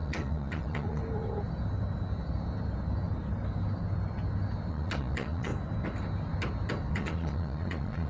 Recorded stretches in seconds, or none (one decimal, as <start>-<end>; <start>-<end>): 1.0-4.7; 5.5-6.9